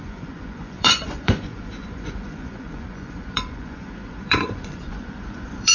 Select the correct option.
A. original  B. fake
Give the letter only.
B